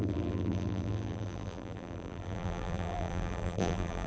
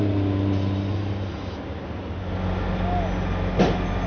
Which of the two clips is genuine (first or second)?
second